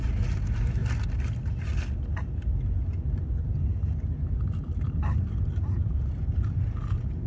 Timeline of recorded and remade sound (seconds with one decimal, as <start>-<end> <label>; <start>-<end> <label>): 0.0-0.8 remade; 0.8-4.2 recorded; 4.2-7.3 remade